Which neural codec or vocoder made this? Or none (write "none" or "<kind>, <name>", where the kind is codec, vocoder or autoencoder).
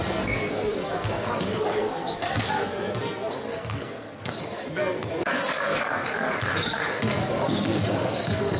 codec, SNAC